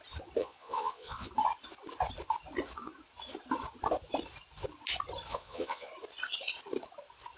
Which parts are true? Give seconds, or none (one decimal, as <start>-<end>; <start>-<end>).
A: 0.0-0.4; 1.3-5.3; 5.9-7.4